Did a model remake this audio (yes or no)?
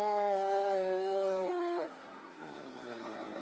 yes